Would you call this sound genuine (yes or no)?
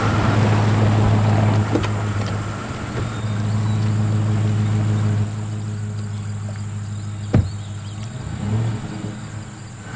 yes